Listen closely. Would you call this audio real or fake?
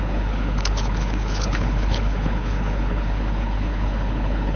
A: fake